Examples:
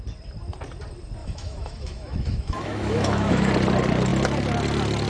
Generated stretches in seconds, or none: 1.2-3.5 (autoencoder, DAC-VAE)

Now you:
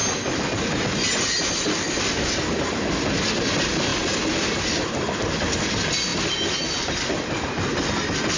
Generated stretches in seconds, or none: none

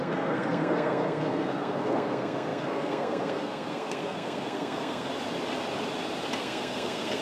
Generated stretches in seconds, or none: 0.0-5.1 (codec, SNAC); 6.4-7.2

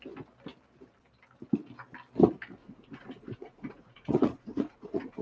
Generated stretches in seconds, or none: 2.6-5.2 (vocoder, Vocos)

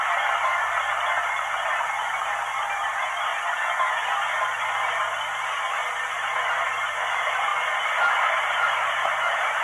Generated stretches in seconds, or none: 0.0-0.5 (vocoder, BigVGAN v2); 1.8-3.3; 4.9-7.5; 8.4-9.6

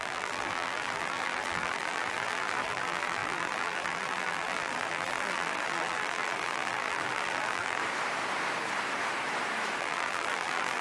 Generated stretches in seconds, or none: 0.0-7.8 (vocoder, BigVGAN v2); 9.8-10.8